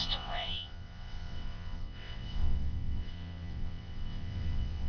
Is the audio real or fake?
fake